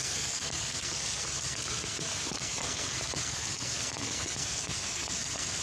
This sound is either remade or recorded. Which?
remade